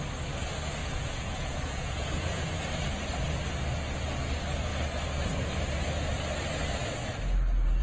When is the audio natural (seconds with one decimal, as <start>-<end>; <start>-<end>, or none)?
0.0-0.8; 2.6-7.8

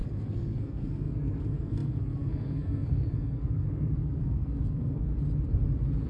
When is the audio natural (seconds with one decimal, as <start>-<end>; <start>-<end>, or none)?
5.1-6.1